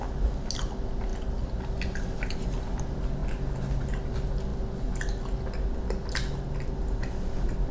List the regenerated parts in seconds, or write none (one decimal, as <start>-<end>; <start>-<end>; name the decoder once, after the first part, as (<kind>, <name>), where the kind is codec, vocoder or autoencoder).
none